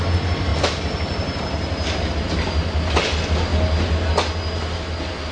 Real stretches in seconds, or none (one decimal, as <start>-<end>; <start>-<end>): 0.0-5.3